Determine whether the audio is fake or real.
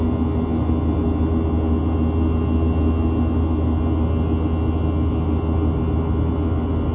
real